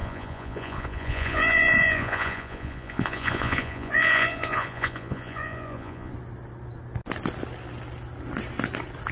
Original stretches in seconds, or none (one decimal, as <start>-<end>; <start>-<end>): 6.1-9.1